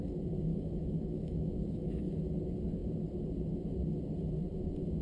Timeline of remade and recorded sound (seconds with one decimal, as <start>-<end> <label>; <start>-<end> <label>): 0.0-0.5 recorded; 0.5-2.1 remade; 2.1-5.0 recorded